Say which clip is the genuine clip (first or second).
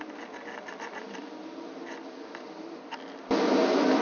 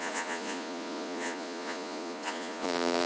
first